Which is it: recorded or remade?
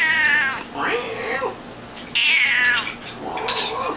recorded